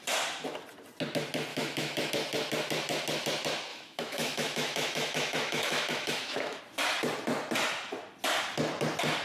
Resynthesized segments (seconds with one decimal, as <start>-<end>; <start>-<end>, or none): 1.5-2.1; 3.7-6.6